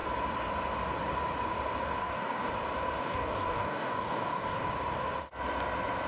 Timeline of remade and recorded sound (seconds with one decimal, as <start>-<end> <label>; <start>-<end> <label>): 0.0-2.0 recorded; 2.0-2.5 remade; 2.5-3.0 recorded; 3.0-4.7 remade; 4.7-6.1 recorded